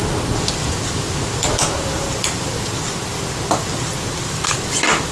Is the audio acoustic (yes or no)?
yes